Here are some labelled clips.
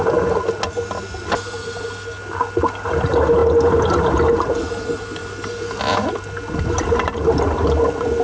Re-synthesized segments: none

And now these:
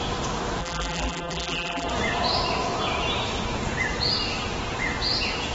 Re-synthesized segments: 0.6-1.9 (vocoder, BigVGAN v2)

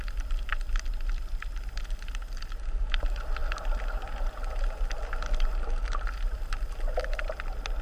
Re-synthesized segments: none

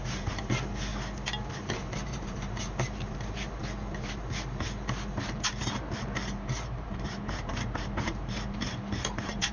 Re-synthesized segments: 0.0-0.9 (vocoder, BigVGAN v2); 1.6-3.6; 5.1-9.5